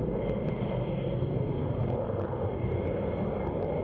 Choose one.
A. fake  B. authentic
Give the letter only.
B